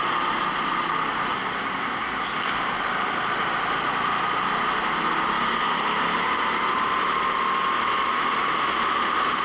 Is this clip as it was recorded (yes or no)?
yes